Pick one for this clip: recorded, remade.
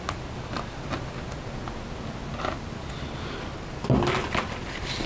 recorded